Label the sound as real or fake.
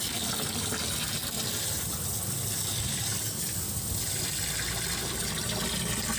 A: real